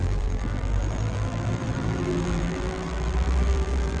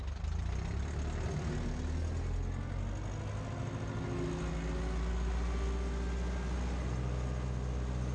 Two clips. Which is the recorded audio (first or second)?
second